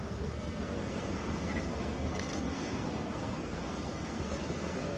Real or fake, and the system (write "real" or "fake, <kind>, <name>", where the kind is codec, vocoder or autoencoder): fake, codec, SNAC